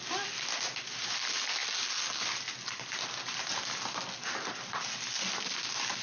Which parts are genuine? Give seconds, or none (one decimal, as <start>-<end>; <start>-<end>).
0.0-6.0